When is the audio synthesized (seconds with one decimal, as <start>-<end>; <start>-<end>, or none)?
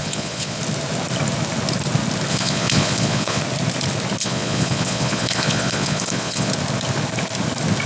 0.0-0.6; 2.3-3.4; 4.2-6.5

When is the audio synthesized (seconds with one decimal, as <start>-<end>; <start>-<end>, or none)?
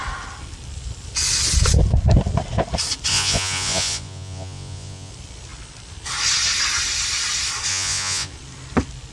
3.1-5.1; 7.7-8.3